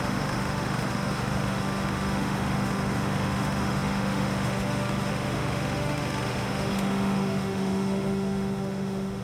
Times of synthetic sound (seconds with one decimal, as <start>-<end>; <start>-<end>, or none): 0.0-9.2